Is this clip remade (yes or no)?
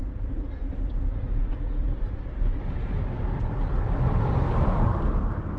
no